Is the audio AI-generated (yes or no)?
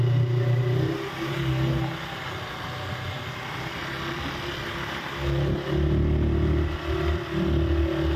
no